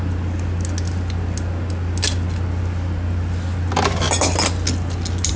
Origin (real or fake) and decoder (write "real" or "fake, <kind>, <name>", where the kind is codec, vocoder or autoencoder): real